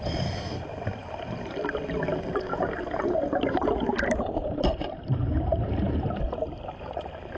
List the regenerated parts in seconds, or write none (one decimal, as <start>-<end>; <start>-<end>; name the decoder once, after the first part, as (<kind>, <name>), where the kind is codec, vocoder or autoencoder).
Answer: 2.5-6.1 (vocoder, BigVGAN v2)